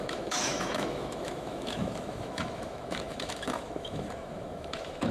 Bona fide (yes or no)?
no